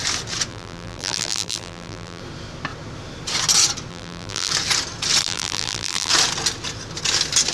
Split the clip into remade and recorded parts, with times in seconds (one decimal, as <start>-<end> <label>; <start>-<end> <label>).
0.0-0.5 recorded; 0.5-2.2 remade; 2.2-3.9 recorded; 3.9-4.5 remade; 4.5-5.2 recorded; 5.2-6.1 remade; 6.1-7.5 recorded